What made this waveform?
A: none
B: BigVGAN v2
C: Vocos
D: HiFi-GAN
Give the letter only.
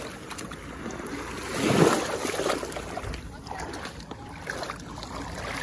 A